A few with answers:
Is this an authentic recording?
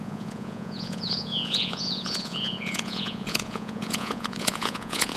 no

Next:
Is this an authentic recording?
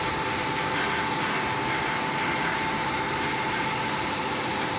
yes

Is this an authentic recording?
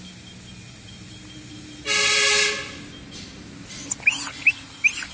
yes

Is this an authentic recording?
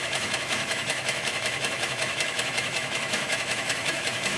no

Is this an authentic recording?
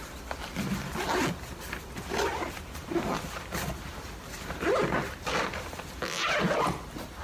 yes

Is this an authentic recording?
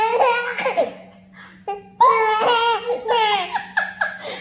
yes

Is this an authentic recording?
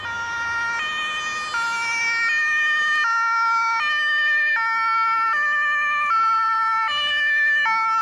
yes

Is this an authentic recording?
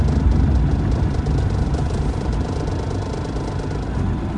yes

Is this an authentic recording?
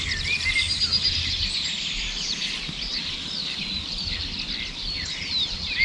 yes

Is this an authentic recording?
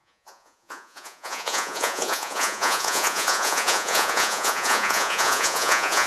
no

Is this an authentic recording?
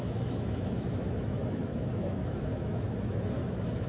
no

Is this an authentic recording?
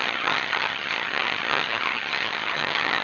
no